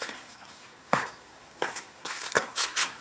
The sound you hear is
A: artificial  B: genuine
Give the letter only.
A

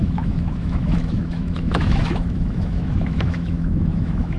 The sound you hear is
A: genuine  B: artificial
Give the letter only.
B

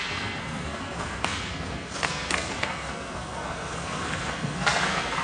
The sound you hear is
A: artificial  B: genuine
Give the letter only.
A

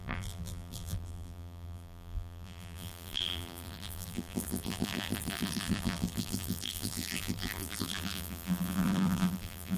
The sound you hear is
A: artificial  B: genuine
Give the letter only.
A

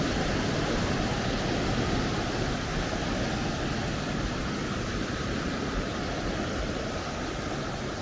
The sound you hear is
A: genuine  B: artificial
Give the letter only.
A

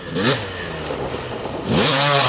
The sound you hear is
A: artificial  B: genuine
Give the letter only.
B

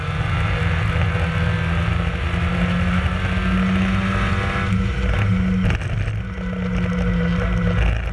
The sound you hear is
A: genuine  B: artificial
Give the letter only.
A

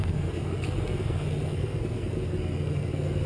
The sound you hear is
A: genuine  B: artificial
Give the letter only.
B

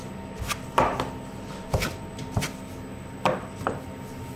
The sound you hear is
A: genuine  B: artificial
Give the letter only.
A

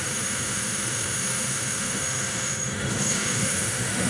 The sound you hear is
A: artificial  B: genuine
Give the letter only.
A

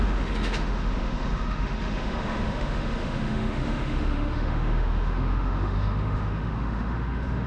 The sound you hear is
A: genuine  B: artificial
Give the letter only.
B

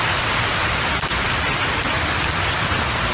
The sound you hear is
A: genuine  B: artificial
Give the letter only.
B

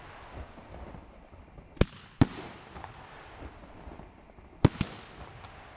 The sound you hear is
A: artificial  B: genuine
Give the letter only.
B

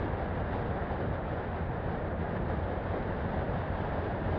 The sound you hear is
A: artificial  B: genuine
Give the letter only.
B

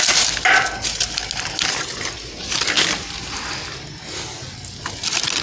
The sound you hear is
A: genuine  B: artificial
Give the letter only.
A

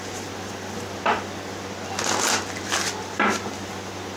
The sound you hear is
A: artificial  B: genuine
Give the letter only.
B